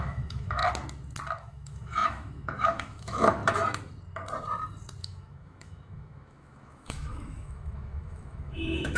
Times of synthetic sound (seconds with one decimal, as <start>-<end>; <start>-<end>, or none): 0.0-0.6; 1.4-3.4; 5.0-9.0